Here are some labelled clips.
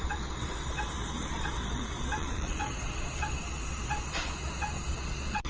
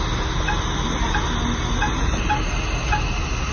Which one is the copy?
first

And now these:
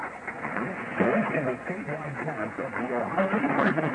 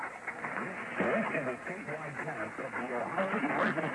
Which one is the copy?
first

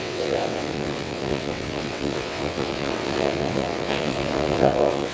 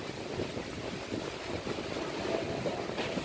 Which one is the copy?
first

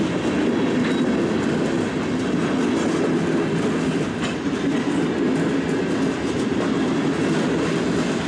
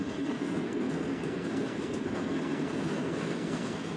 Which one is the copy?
second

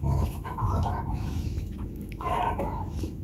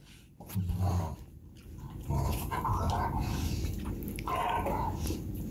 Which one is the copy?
first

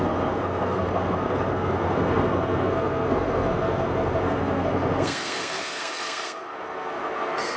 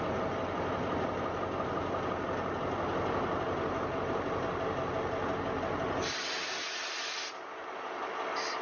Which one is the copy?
first